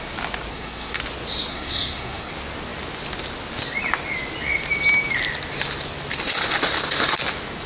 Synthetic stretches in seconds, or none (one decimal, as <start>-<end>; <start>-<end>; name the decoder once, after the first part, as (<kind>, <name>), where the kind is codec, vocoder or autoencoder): 0.5-1.0 (codec, SNAC); 1.5-2.3